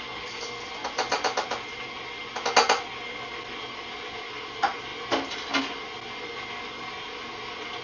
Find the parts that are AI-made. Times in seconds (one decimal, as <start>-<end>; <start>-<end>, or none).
none